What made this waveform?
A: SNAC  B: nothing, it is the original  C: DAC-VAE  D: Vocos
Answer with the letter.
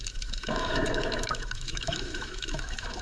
C